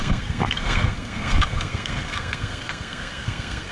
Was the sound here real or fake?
fake